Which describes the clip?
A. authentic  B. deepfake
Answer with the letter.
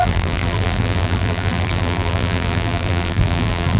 B